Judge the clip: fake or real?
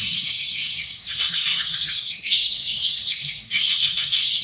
fake